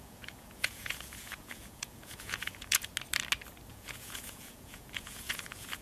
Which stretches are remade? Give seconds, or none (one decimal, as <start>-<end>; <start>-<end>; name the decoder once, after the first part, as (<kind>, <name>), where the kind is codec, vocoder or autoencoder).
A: 0.0-2.9 (vocoder, Vocos); 3.7-5.8